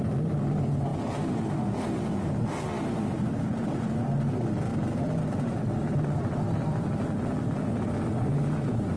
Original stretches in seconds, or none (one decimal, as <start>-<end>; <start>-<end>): 0.0-4.7; 7.9-9.0